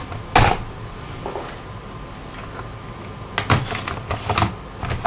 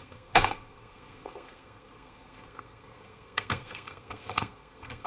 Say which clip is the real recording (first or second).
first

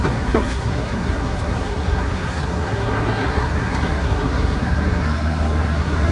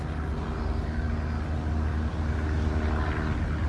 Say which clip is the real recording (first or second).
second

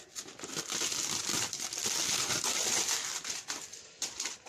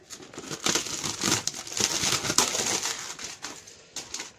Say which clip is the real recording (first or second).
second